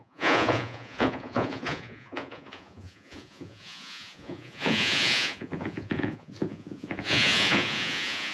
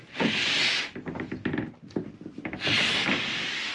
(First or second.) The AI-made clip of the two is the first